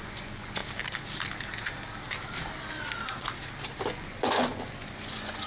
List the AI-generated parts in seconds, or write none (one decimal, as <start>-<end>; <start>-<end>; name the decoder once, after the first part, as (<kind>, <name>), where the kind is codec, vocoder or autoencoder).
0.0-0.6 (vocoder, Vocos); 3.9-5.5